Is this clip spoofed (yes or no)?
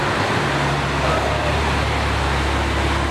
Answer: no